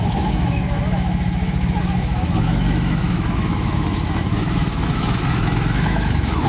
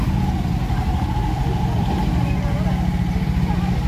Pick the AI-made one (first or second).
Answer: first